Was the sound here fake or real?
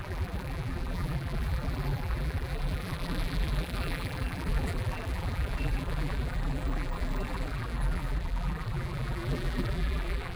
fake